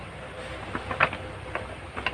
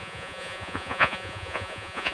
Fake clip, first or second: second